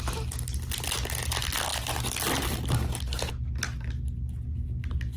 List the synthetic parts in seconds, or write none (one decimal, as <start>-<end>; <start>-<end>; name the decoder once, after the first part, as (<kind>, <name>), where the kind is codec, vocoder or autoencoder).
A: none